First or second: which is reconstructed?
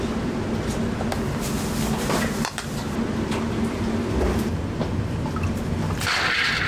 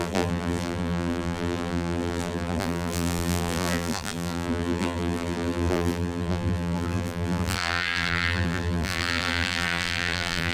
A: second